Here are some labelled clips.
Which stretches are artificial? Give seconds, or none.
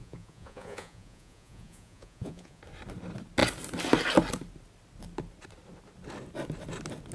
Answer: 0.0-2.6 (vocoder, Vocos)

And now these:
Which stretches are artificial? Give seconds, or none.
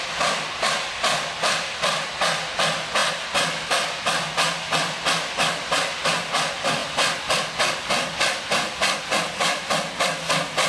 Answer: none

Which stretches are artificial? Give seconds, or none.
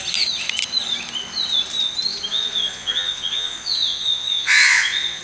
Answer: 2.3-5.2 (vocoder, Vocos)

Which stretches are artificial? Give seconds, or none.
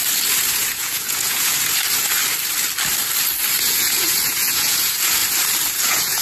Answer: 0.5-1.5 (vocoder, Vocos); 3.6-5.2; 5.7-6.2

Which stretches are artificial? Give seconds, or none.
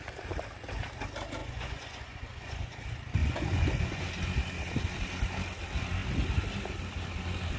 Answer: 1.4-2.8 (vocoder, Vocos); 3.2-4.1